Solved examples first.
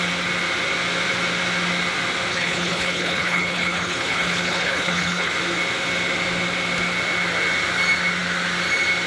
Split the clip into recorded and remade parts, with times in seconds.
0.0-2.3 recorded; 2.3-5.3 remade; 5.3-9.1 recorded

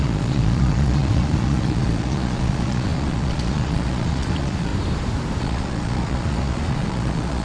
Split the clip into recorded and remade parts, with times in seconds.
0.0-4.7 remade; 4.7-5.4 recorded; 5.4-7.4 remade

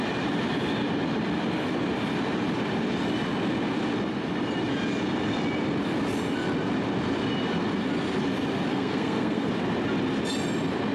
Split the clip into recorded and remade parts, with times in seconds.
0.0-8.7 recorded; 8.7-9.5 remade; 9.5-10.9 recorded

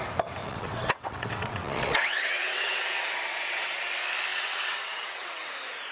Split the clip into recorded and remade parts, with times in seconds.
0.0-0.4 recorded; 0.4-3.9 remade; 3.9-4.3 recorded; 4.3-5.5 remade; 5.5-5.9 recorded

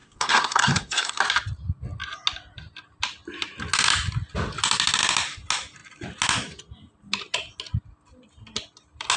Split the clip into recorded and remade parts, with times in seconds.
0.0-1.2 remade; 1.2-9.2 recorded

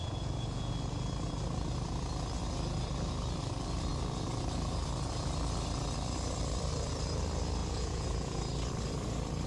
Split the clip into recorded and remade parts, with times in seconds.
0.0-0.7 remade; 0.7-7.6 recorded; 7.6-8.4 remade; 8.4-9.5 recorded